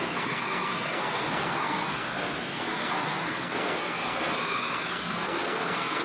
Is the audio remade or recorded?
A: remade